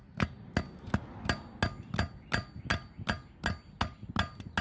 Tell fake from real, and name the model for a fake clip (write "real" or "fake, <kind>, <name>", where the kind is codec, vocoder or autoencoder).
real